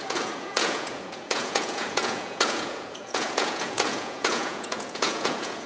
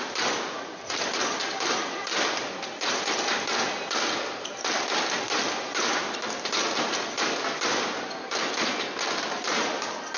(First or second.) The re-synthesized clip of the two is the first